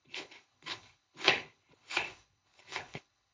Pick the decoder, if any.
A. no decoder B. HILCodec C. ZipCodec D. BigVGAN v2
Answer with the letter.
B